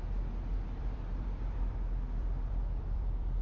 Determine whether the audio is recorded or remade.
remade